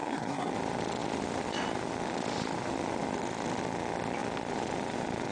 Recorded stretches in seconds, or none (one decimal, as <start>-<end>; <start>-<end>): 0.5-5.3